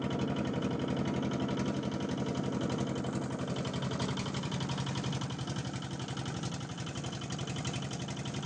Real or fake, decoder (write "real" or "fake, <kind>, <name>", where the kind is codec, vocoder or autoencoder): real